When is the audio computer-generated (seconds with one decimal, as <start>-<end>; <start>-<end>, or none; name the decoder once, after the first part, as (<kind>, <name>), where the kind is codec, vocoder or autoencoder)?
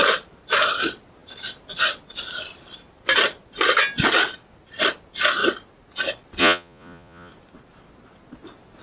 6.4-7.3 (vocoder, Vocos)